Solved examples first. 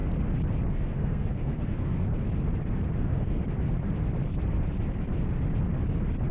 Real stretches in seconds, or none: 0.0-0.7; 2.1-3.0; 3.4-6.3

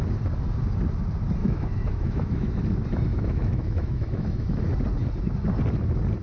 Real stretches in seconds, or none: 0.0-1.4; 2.6-3.1; 4.6-6.2

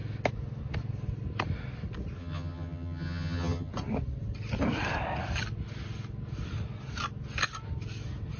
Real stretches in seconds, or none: 0.0-2.2; 3.7-8.4

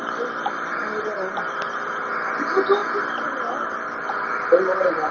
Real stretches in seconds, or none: 0.0-5.1

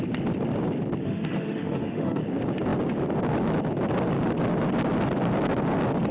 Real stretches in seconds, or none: 0.0-1.0; 2.2-6.1

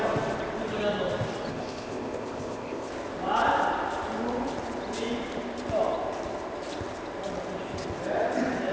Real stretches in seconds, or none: 0.0-1.5; 2.9-8.7